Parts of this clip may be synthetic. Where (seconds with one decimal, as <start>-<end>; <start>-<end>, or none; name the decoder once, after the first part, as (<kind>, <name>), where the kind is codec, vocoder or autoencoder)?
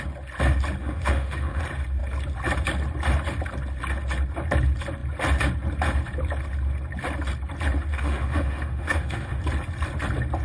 0.8-1.6 (autoencoder, DAC-VAE); 7.9-9.4